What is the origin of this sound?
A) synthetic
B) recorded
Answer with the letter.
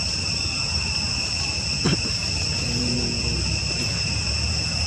B